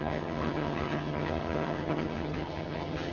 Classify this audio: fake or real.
fake